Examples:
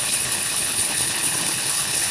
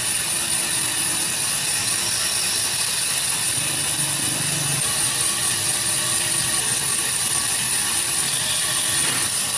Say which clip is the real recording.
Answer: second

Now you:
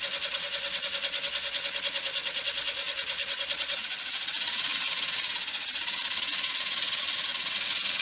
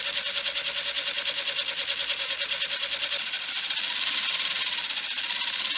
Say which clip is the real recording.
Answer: second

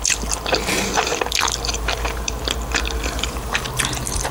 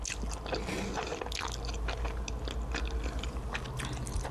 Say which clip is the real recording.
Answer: second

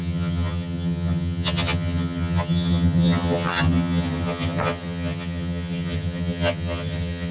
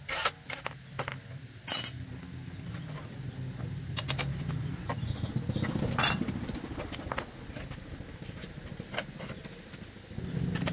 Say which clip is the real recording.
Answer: second